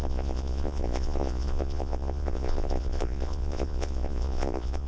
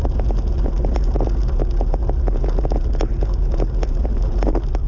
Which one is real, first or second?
second